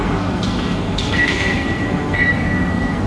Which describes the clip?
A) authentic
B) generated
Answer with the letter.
B